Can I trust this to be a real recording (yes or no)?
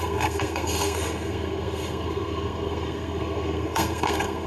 no